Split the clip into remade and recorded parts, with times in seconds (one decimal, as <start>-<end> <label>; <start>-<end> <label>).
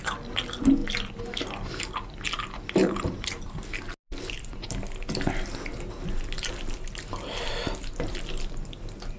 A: 0.0-2.8 recorded; 2.8-3.7 remade; 3.7-9.2 recorded